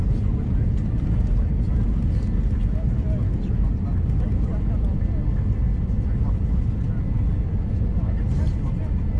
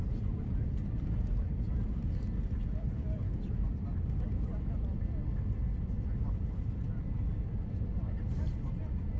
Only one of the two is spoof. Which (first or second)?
second